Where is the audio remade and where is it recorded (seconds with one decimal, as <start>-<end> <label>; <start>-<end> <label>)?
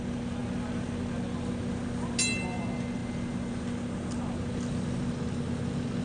0.0-6.0 recorded